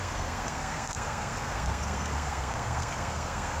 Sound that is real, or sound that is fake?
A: fake